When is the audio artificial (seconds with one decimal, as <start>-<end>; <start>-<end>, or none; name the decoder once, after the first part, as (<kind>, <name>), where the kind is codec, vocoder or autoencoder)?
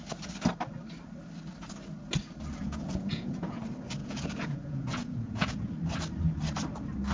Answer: 2.6-3.6 (vocoder, Vocos); 4.0-5.7